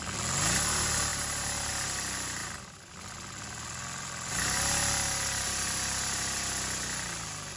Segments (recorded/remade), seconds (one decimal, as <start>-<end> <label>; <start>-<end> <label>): 0.0-1.1 recorded; 1.1-1.7 remade; 1.7-7.6 recorded